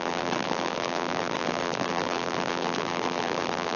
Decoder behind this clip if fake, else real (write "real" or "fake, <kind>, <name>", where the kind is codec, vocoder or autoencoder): fake, vocoder, BigVGAN v2